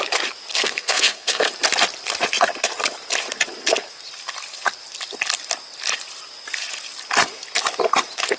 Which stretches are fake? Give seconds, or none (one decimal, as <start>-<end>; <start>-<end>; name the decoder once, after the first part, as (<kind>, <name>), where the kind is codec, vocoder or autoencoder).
0.5-1.5 (codec, SNAC)